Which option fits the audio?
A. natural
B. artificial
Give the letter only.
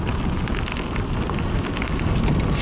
A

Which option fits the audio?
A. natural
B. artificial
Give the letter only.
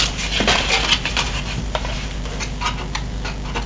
A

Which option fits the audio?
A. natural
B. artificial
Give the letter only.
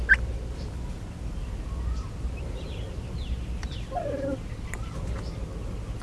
A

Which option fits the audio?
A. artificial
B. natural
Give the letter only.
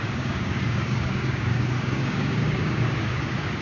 A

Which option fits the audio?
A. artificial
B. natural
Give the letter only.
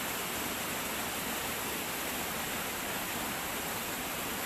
B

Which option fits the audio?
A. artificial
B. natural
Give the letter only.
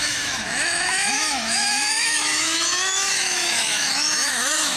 A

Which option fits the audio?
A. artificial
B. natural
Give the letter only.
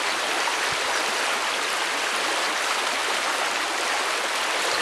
B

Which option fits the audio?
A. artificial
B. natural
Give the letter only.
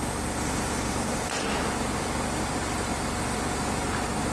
A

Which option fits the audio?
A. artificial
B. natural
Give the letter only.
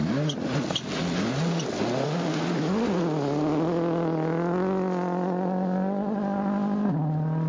B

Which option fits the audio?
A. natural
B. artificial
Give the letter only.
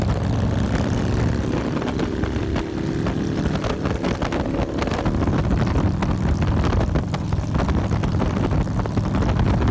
A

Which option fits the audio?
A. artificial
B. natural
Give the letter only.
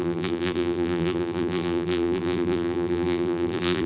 A